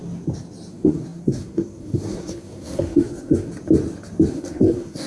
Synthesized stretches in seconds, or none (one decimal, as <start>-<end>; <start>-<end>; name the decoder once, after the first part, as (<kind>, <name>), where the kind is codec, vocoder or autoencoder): 0.7-3.5 (codec, SNAC); 4.3-5.1